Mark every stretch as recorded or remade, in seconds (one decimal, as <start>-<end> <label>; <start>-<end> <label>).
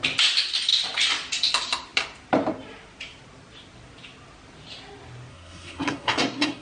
0.0-5.3 recorded; 5.3-6.6 remade